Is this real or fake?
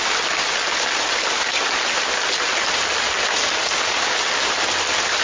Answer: real